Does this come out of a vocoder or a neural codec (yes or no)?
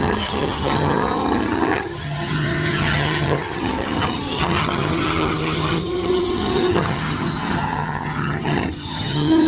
yes